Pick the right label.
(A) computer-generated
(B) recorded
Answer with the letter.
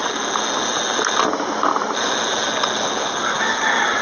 B